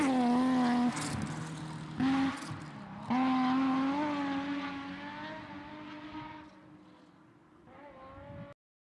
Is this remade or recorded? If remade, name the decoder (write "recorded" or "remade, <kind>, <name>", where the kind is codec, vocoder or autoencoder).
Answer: recorded